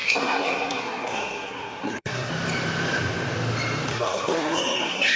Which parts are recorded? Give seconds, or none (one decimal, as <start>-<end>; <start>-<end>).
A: 2.3-3.9